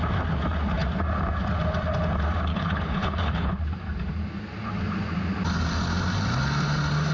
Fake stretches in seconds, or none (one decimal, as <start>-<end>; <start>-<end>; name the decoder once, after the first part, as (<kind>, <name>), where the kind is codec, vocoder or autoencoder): 2.5-3.5 (codec, HILCodec)